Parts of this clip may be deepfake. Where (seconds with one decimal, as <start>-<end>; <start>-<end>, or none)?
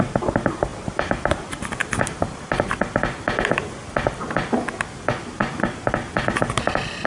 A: 0.0-1.8; 6.1-7.1